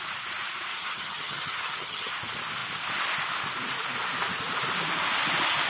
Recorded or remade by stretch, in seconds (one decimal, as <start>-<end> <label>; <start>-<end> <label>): 0.0-0.7 recorded; 0.7-2.1 remade; 2.1-5.7 recorded